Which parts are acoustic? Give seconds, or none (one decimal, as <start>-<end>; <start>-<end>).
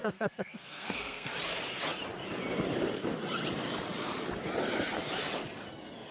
1.3-6.1